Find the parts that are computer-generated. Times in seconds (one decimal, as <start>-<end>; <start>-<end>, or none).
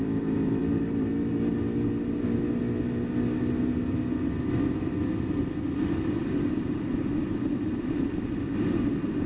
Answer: 0.0-1.3; 6.2-9.3